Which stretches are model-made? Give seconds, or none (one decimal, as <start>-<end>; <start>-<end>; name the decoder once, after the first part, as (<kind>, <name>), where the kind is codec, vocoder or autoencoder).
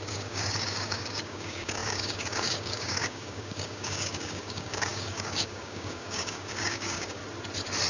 0.0-7.2 (codec, DAC)